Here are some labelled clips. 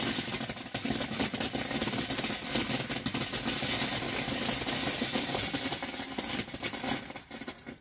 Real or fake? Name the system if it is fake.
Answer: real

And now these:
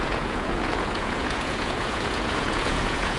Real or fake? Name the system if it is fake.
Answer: fake, vocoder, Vocos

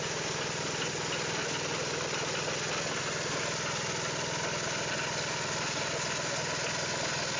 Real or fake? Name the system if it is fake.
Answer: real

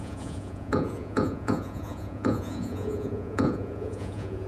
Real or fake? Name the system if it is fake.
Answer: fake, vocoder, Vocos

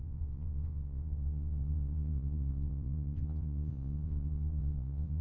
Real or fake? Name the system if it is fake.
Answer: fake, vocoder, Vocos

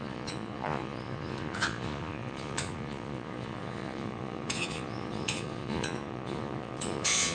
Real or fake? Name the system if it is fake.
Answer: fake, vocoder, Vocos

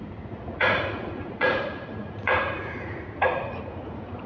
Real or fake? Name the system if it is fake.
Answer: fake, vocoder, Vocos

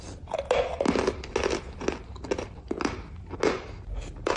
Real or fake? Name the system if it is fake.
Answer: real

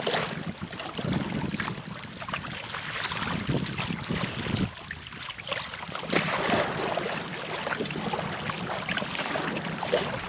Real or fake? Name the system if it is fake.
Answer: real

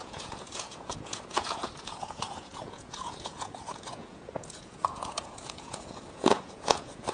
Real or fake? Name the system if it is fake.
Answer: fake, vocoder, Vocos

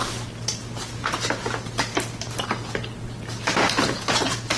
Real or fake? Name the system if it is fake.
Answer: real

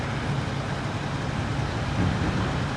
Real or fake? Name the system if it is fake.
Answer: real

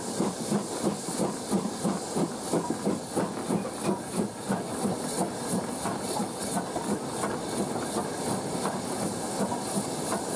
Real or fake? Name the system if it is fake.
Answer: real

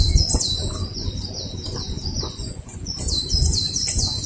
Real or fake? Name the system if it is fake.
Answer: fake, vocoder, Vocos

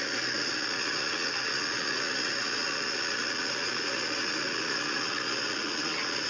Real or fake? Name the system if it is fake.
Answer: fake, vocoder, Vocos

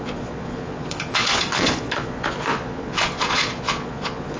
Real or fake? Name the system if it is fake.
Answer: fake, vocoder, Vocos